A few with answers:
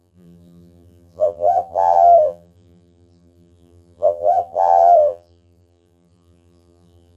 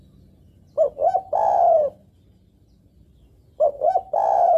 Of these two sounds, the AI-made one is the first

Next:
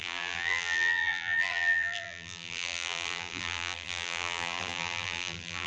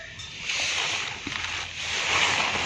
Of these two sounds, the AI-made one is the first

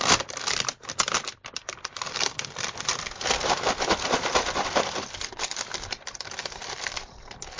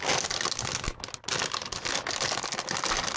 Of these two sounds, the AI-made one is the first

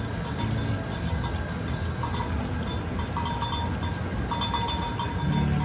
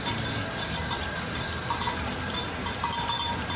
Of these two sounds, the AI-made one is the second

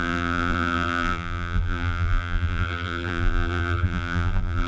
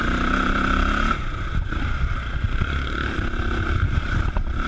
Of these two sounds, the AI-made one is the first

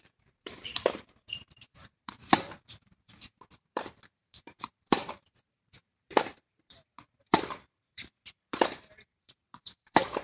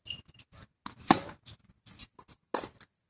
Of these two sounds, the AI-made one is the first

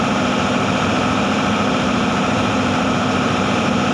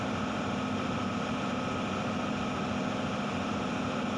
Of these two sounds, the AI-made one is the first